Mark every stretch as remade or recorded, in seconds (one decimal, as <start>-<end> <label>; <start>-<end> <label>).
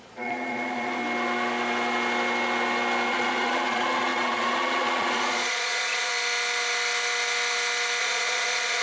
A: 0.0-1.0 remade; 1.0-3.1 recorded; 3.1-6.1 remade; 6.1-8.0 recorded; 8.0-8.8 remade